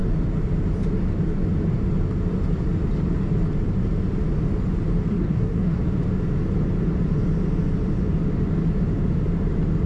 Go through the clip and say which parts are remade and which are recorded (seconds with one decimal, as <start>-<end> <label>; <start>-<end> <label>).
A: 0.0-5.1 recorded; 5.1-5.8 remade; 5.8-9.9 recorded